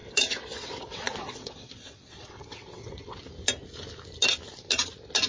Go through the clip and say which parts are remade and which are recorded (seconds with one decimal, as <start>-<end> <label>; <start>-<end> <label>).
0.0-3.2 remade; 3.2-5.3 recorded